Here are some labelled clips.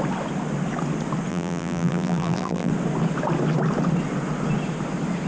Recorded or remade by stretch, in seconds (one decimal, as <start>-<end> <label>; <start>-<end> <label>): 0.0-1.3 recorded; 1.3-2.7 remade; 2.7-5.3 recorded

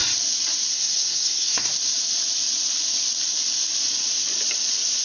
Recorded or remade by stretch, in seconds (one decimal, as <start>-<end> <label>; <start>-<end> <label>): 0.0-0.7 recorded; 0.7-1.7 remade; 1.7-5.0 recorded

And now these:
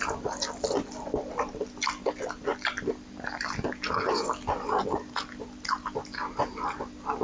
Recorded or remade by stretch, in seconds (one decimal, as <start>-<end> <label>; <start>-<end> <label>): 0.0-7.2 recorded

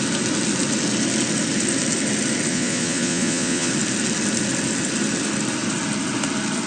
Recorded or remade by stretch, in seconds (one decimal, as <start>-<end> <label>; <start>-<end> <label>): 0.0-2.5 recorded; 2.5-3.7 remade; 3.7-6.7 recorded